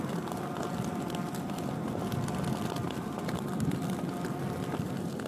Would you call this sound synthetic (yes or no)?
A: no